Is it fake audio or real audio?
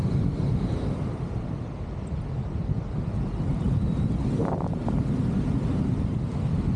real